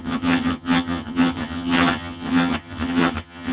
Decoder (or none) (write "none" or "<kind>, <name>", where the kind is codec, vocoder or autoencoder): vocoder, HiFi-GAN